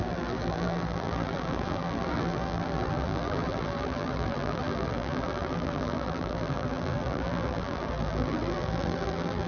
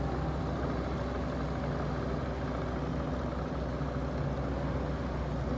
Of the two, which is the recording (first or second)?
second